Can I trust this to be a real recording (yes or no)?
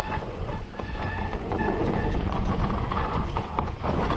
no